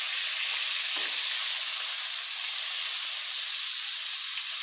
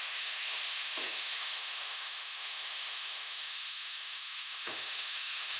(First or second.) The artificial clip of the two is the second